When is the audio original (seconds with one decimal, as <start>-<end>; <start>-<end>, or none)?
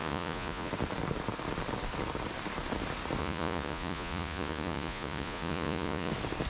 0.7-3.2; 6.1-6.5